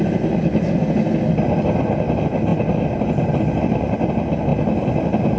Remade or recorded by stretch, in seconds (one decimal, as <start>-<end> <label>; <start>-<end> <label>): 0.0-5.4 recorded